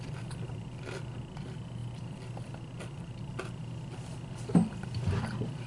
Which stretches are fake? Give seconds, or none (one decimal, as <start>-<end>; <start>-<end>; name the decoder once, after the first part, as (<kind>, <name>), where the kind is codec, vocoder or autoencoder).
none